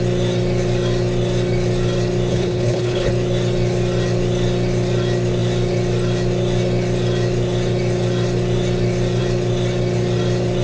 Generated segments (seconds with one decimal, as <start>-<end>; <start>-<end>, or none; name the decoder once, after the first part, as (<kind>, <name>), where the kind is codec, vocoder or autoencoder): 2.3-3.1 (codec, HILCodec)